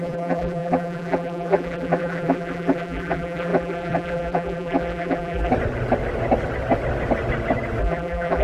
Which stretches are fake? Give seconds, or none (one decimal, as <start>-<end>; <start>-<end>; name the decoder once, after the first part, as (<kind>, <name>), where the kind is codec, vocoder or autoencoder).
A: 0.0-5.5 (vocoder, BigVGAN v2); 7.8-8.4